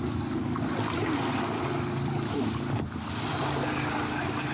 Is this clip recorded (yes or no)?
yes